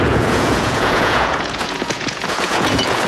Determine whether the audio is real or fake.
fake